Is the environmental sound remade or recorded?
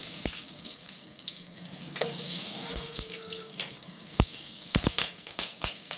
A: remade